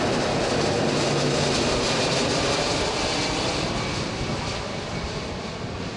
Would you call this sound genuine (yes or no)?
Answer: yes